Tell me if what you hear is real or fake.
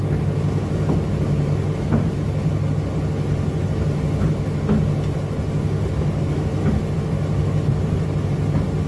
real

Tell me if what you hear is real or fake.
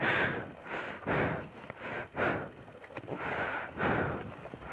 real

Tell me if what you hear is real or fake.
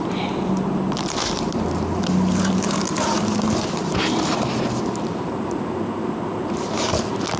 fake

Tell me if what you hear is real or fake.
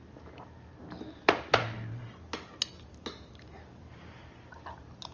real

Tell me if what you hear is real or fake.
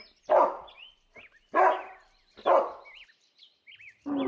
real